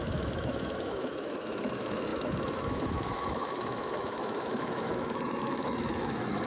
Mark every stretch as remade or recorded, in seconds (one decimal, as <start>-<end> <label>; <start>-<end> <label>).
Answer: 0.0-6.5 remade